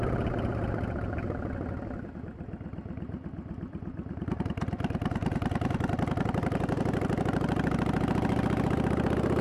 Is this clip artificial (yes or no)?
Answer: no